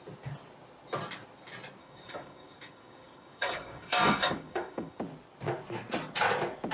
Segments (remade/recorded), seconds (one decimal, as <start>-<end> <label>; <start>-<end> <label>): 0.0-1.8 recorded; 1.8-5.0 remade; 5.0-6.7 recorded

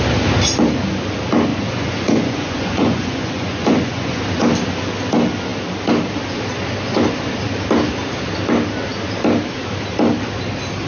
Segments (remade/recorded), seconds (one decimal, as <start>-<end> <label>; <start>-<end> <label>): 0.0-1.5 recorded; 1.5-4.2 remade; 4.2-10.9 recorded

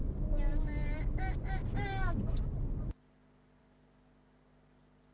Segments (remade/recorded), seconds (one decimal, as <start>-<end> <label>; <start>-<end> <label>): 0.0-5.1 recorded